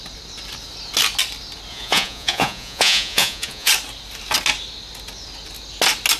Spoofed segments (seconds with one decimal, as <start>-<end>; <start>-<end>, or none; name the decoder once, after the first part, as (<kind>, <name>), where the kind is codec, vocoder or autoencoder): 1.7-3.7 (vocoder, Vocos)